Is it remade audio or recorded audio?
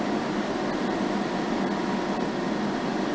recorded